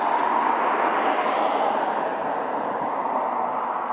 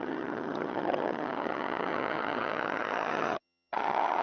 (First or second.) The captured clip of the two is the first